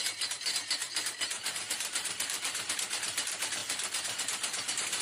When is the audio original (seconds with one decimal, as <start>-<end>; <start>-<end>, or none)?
3.6-5.0

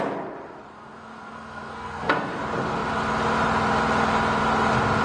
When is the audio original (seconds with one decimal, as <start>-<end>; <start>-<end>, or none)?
0.0-0.7; 2.4-5.0

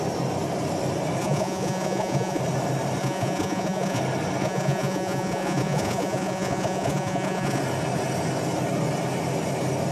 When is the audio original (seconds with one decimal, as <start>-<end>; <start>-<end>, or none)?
0.0-1.2; 2.4-3.0; 4.0-4.4; 7.6-9.9

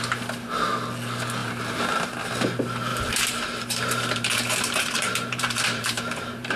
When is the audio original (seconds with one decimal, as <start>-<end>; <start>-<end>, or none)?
0.0-1.4; 2.3-2.9

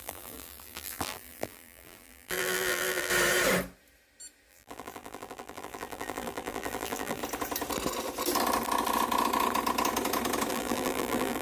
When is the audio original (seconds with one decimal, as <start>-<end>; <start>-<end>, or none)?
3.1-4.5; 7.2-10.5

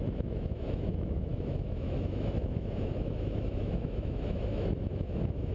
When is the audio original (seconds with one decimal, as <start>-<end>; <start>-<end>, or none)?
none

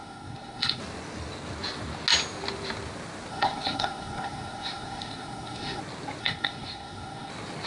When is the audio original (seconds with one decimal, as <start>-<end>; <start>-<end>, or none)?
0.8-3.3; 5.8-6.2; 7.3-7.7